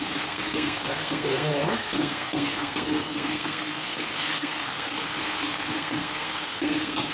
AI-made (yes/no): yes